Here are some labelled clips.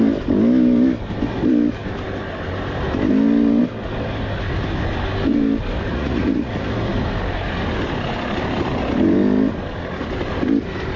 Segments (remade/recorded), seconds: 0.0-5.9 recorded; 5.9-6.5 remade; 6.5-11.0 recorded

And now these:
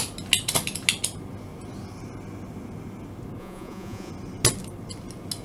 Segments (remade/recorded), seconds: 0.0-3.4 recorded; 3.4-4.1 remade; 4.1-5.4 recorded

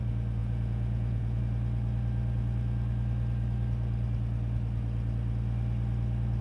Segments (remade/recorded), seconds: 0.0-0.4 recorded; 0.4-1.4 remade; 1.4-6.4 recorded